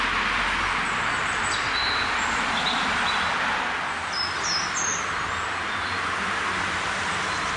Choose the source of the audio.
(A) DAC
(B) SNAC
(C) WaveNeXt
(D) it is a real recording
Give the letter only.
D